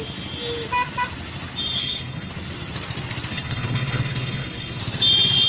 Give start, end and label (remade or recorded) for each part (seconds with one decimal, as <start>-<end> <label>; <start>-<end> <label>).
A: 0.0-1.8 recorded; 1.8-2.3 remade; 2.3-3.3 recorded; 3.3-4.8 remade; 4.8-5.5 recorded